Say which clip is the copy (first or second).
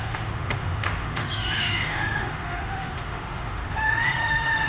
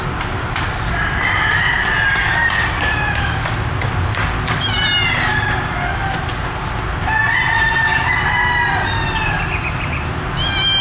first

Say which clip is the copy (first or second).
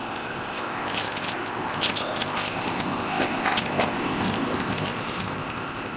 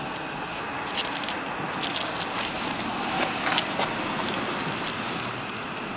first